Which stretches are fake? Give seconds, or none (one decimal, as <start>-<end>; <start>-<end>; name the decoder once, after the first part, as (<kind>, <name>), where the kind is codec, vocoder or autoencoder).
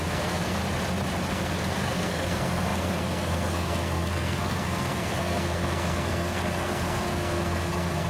0.0-0.6 (codec, SNAC); 1.3-8.1